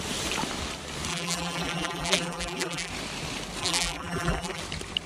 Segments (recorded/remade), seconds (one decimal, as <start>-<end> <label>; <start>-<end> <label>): 0.0-1.1 recorded; 1.1-2.9 remade; 2.9-3.6 recorded; 3.6-4.6 remade; 4.6-5.1 recorded